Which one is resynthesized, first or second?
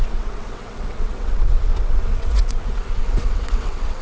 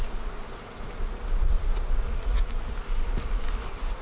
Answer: first